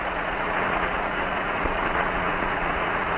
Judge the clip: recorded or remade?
remade